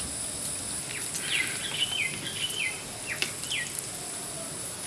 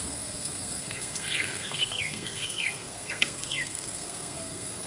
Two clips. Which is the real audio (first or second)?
first